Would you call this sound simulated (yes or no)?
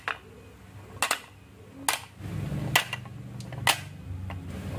no